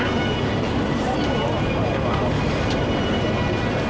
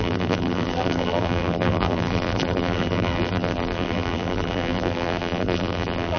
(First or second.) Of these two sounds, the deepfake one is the second